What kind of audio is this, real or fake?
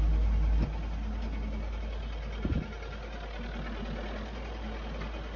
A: real